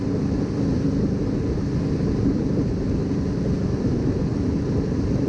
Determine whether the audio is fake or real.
real